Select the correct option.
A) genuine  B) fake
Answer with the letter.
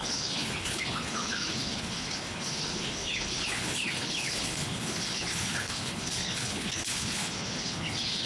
B